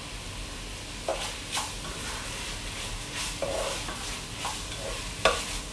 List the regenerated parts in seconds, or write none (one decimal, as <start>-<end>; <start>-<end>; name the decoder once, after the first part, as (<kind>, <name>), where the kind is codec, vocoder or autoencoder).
none